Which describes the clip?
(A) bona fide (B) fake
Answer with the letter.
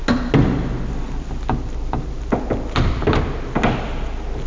A